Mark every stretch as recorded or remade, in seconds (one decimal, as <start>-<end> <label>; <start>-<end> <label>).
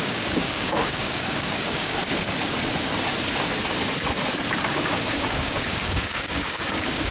0.0-2.0 remade; 2.0-4.7 recorded; 4.7-7.1 remade